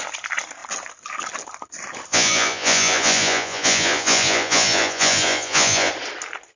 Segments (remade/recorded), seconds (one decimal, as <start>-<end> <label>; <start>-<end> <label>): 0.0-2.1 recorded; 2.1-5.9 remade; 5.9-6.6 recorded